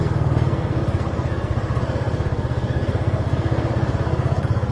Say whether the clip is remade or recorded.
remade